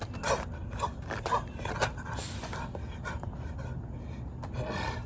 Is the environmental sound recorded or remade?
recorded